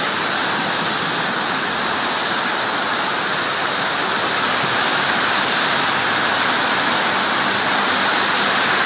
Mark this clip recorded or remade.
recorded